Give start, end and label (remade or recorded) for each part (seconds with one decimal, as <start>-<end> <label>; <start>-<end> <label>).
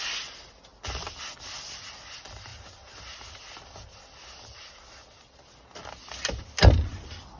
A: 0.0-7.4 recorded